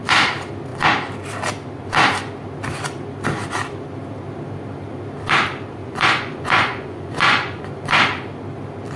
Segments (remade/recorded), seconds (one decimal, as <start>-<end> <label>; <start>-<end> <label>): 0.0-5.8 recorded; 5.8-7.6 remade; 7.6-9.0 recorded